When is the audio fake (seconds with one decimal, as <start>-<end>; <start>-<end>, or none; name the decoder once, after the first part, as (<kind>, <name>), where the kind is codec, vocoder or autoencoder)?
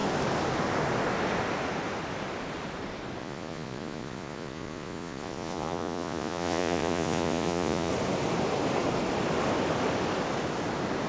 3.2-7.9 (vocoder, Vocos)